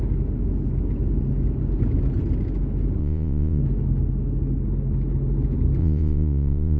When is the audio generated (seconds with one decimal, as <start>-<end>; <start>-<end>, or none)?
3.0-3.6; 5.8-6.8